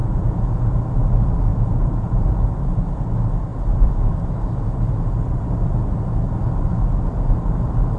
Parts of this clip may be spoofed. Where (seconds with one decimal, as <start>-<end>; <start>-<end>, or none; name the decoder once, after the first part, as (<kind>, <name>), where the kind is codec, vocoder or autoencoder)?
0.0-0.8 (vocoder, Vocos); 1.5-2.2